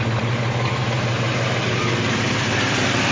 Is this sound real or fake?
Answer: fake